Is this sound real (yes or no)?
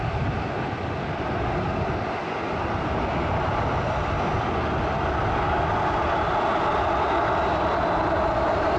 yes